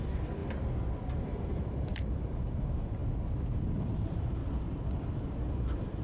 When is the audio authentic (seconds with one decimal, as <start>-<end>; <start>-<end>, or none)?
0.4-1.1; 3.0-3.8; 4.4-5.6